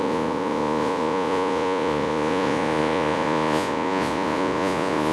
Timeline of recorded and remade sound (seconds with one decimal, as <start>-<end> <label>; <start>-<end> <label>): 0.0-5.1 remade